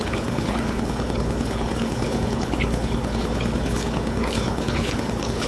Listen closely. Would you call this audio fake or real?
fake